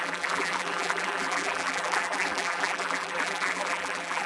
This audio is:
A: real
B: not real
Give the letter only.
B